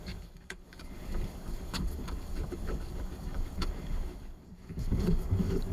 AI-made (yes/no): yes